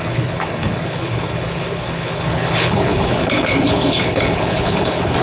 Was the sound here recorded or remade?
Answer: remade